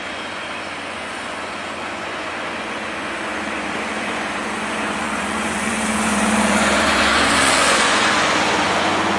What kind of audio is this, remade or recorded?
remade